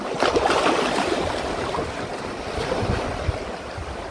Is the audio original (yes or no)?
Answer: no